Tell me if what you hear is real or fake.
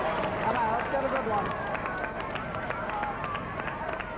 real